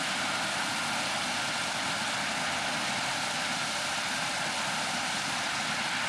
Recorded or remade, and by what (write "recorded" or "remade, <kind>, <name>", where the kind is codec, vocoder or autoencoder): recorded